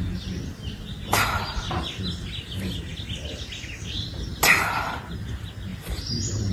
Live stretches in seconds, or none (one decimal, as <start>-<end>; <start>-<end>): 0.0-5.7